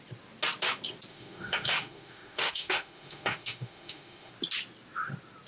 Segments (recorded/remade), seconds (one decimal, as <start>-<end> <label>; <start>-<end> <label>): 0.0-1.1 recorded; 1.1-4.3 remade; 4.3-5.5 recorded